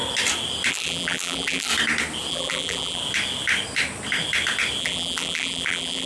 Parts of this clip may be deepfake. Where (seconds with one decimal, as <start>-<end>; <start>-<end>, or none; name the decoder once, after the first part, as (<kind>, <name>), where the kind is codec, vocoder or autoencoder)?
0.7-1.7 (vocoder, BigVGAN v2); 2.3-3.0; 4.8-6.1